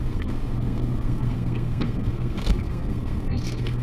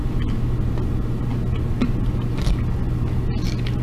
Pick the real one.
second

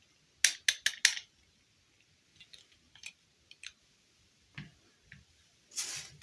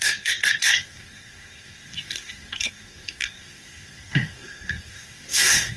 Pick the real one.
first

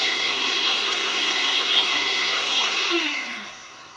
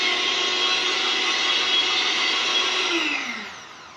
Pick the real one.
second